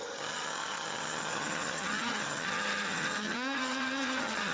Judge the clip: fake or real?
fake